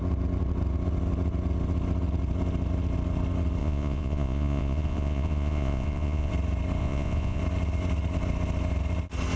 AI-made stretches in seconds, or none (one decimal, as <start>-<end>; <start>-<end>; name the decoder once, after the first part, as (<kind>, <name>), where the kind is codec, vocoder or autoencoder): 3.6-6.3 (vocoder, Vocos); 6.8-7.4